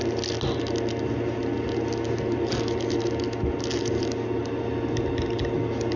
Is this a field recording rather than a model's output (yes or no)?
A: yes